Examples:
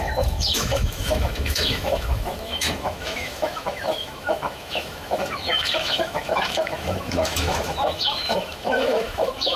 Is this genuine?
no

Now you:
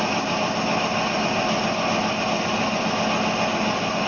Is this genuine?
yes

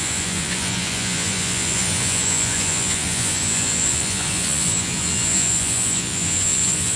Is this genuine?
no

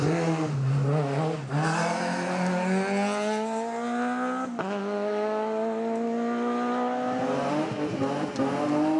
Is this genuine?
yes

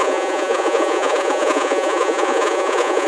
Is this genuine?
no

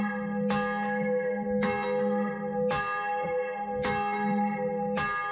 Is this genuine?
yes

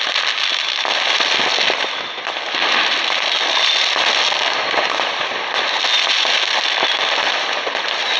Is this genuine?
yes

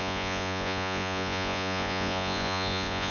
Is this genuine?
no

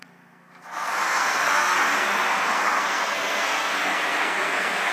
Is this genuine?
no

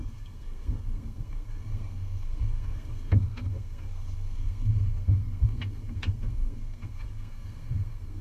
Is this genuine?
no